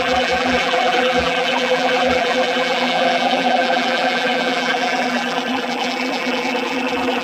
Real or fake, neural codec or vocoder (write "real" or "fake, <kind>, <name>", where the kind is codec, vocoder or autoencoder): fake, vocoder, BigVGAN v2